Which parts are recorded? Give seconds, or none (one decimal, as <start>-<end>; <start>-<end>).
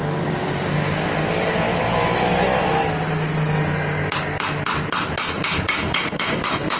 0.0-5.2